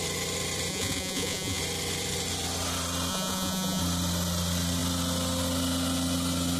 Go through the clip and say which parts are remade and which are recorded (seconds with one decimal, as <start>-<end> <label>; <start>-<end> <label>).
0.0-0.7 recorded; 0.7-1.6 remade; 1.6-3.1 recorded; 3.1-3.8 remade; 3.8-6.6 recorded